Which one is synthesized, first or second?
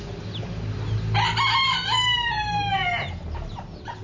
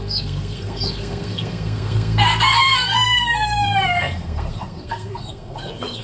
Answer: second